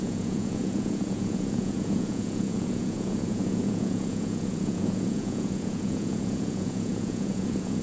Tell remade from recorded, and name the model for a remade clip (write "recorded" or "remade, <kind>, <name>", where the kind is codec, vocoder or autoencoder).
remade, vocoder, Vocos